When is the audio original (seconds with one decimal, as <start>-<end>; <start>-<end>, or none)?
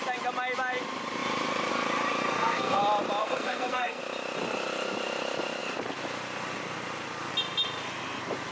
0.0-2.2; 2.8-3.2; 4.0-8.5